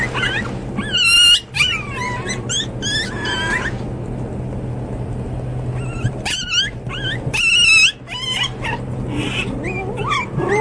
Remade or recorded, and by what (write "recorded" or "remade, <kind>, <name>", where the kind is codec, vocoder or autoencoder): recorded